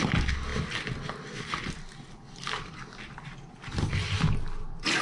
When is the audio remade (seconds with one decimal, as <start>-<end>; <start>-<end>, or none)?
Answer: none